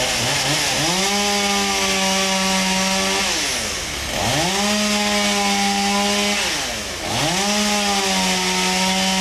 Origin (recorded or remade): recorded